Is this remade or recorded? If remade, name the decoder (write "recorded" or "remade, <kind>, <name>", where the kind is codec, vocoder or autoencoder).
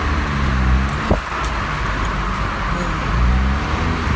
recorded